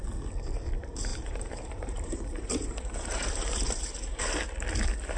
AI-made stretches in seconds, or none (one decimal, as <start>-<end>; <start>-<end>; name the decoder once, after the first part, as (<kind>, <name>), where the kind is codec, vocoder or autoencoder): 1.1-4.2 (vocoder, BigVGAN v2)